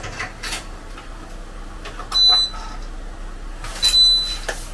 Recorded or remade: recorded